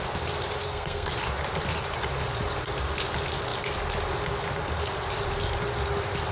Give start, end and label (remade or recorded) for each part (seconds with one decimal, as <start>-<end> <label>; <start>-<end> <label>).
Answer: 0.0-0.6 recorded; 0.6-1.1 remade; 1.1-6.3 recorded

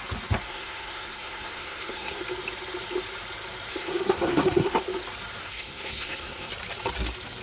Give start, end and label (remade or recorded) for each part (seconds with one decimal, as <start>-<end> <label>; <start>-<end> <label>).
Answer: 0.0-0.4 recorded; 0.4-2.2 remade; 2.2-3.7 recorded; 3.7-4.8 remade; 4.8-5.4 recorded; 5.4-6.5 remade; 6.5-7.4 recorded

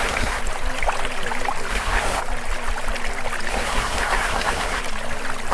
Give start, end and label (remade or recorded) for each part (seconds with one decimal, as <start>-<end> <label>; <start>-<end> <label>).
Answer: 0.0-0.4 remade; 0.4-1.7 recorded; 1.7-2.2 remade; 2.2-3.5 recorded; 3.5-4.8 remade; 4.8-5.5 recorded

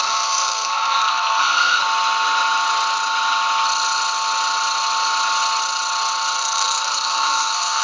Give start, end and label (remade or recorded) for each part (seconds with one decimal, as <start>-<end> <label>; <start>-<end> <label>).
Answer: 0.0-1.8 remade; 1.8-6.4 recorded; 6.4-7.8 remade

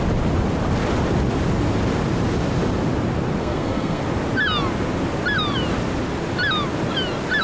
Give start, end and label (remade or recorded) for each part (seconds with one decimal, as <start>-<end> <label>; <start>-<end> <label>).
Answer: 0.0-3.4 recorded; 3.4-4.0 remade; 4.0-7.4 recorded

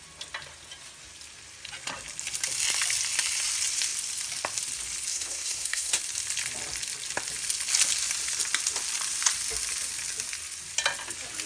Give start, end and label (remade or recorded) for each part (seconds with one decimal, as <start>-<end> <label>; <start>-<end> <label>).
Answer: 0.0-5.1 recorded; 5.1-6.0 remade; 6.0-11.5 recorded

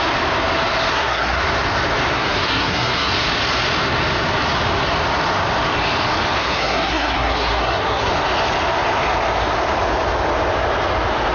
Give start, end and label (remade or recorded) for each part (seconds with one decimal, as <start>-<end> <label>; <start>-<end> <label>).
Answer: 0.0-0.9 recorded; 0.9-1.4 remade; 1.4-2.1 recorded; 2.1-3.1 remade; 3.1-6.4 recorded; 6.4-8.1 remade; 8.1-11.3 recorded

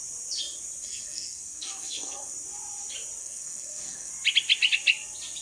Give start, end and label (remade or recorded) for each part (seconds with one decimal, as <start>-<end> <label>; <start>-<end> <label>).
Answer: 0.0-0.8 recorded; 0.8-2.3 remade; 2.3-3.2 recorded; 3.2-4.1 remade; 4.1-5.4 recorded